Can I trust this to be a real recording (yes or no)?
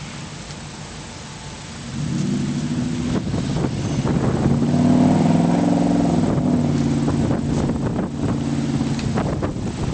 yes